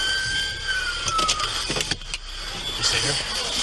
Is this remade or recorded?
remade